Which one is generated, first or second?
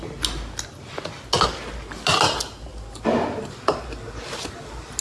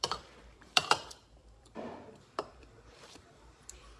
second